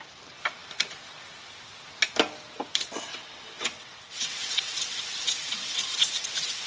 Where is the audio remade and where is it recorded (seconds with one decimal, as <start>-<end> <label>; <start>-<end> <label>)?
0.0-3.1 recorded; 3.1-6.7 remade